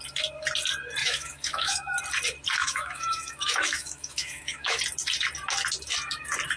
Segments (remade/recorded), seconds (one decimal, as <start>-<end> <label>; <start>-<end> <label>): 0.0-1.0 recorded; 1.0-2.0 remade; 2.0-2.6 recorded; 2.6-4.8 remade; 4.8-6.6 recorded